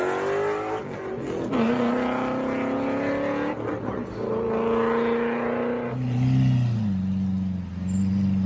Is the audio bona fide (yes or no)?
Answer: yes